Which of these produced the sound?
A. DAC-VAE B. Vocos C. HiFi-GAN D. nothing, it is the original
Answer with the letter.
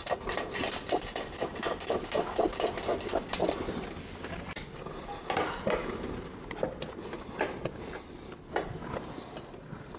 D